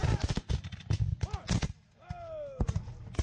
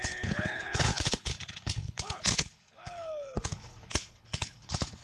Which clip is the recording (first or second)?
first